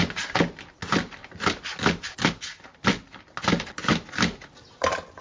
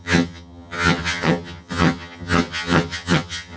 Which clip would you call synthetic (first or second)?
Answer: second